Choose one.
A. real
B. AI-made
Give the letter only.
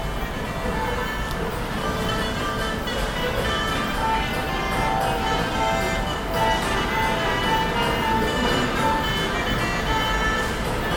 A